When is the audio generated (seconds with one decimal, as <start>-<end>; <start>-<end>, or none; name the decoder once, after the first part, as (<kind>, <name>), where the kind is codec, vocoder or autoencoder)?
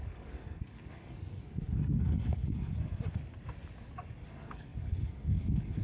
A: 0.0-2.7 (codec, SNAC); 4.3-5.8